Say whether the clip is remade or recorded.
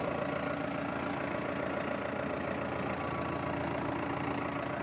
recorded